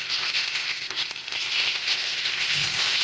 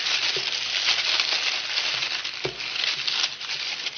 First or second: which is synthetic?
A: first